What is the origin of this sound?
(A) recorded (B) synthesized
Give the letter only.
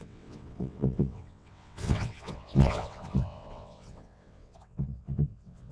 B